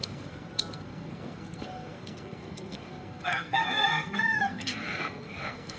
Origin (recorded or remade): remade